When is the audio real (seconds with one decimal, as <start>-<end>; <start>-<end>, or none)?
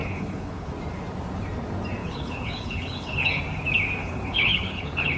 0.7-2.0; 3.4-4.0